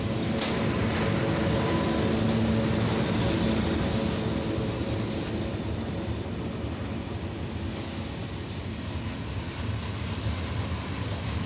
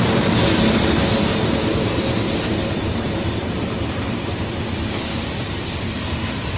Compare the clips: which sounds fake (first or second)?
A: second